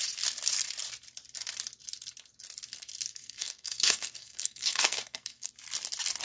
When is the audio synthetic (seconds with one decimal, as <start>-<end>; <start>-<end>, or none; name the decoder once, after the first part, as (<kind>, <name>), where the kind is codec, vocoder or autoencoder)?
3.1-5.5 (codec, SNAC)